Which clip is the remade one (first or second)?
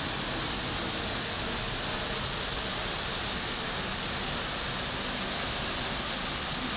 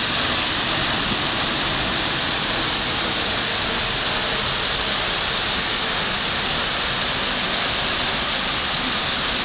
second